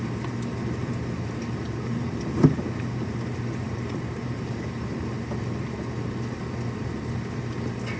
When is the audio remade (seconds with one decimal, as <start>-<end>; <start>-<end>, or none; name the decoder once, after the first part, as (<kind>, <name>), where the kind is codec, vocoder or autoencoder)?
0.8-5.0 (vocoder, BigVGAN v2)